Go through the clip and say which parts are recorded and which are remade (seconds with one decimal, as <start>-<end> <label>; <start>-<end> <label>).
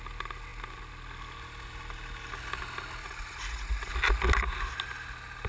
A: 0.0-3.0 recorded; 3.0-3.9 remade; 3.9-5.5 recorded